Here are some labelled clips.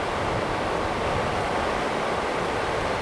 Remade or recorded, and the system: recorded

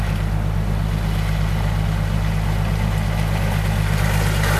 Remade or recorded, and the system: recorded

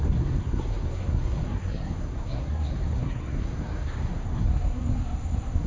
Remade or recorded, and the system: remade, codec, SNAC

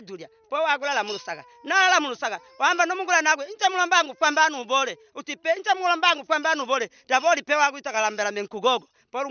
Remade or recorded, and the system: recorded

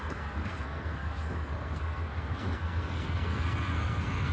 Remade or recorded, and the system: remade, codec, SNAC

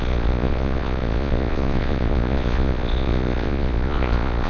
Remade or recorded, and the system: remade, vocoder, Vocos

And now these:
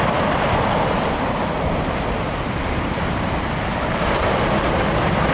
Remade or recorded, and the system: recorded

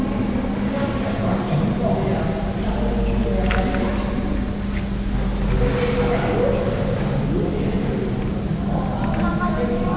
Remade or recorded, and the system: recorded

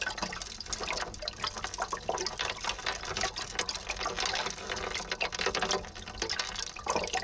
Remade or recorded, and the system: recorded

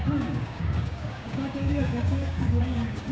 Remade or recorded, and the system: remade, codec, DAC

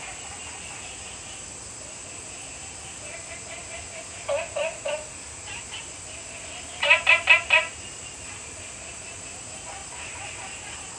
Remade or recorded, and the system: recorded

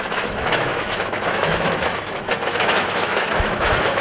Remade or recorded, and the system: remade, autoencoder, DAC-VAE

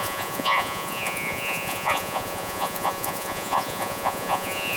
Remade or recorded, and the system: remade, vocoder, Vocos